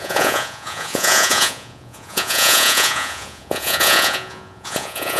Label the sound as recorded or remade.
remade